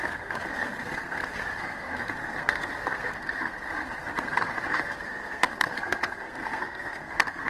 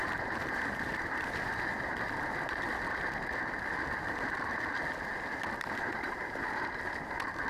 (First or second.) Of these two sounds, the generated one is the first